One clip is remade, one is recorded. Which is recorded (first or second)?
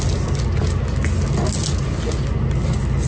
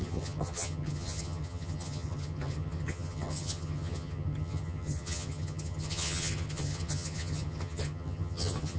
first